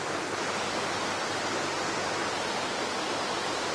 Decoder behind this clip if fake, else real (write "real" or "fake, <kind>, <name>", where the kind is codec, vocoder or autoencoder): real